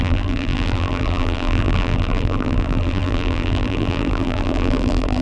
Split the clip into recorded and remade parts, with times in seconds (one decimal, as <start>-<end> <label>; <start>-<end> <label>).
0.0-5.2 remade